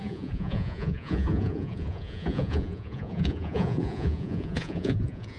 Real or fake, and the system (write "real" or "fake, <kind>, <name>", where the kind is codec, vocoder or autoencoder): fake, vocoder, Vocos